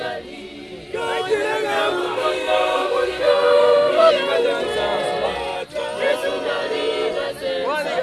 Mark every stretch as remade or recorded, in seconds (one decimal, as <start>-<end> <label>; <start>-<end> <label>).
0.0-2.0 recorded; 2.0-4.1 remade; 4.1-8.0 recorded